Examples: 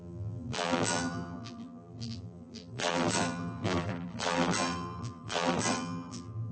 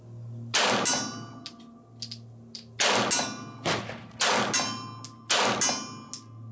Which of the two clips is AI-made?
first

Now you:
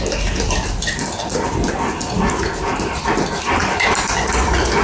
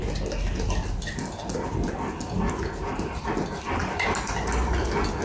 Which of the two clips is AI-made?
first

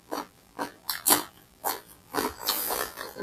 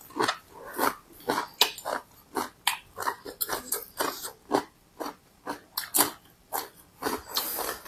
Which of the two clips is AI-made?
first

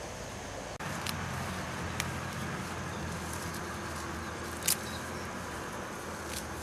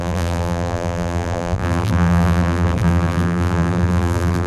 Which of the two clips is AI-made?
second